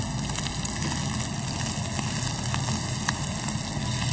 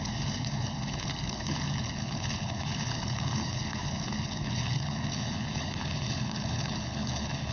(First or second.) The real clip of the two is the first